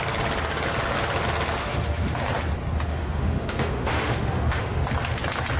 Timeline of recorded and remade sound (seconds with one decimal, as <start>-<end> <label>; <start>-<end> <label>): 0.0-1.6 recorded; 1.6-2.2 remade; 2.2-2.9 recorded; 2.9-4.8 remade; 4.8-5.6 recorded